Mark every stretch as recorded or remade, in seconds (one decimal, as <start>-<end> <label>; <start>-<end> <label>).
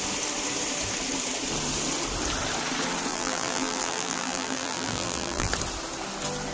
0.0-3.1 recorded; 3.1-5.5 remade; 5.5-6.5 recorded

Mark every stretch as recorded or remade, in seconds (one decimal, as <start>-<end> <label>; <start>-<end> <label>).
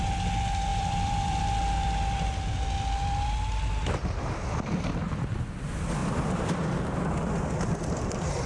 0.0-0.7 recorded; 0.7-1.4 remade; 1.4-6.0 recorded; 6.0-6.8 remade; 6.8-8.5 recorded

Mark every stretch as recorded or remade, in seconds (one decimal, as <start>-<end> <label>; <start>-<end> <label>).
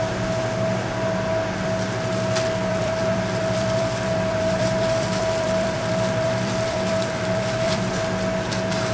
0.0-2.7 recorded; 2.7-7.9 remade; 7.9-8.9 recorded